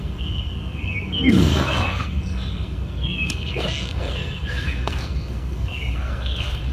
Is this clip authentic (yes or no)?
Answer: no